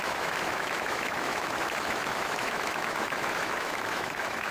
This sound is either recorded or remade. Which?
remade